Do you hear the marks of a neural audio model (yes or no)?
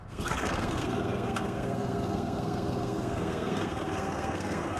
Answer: yes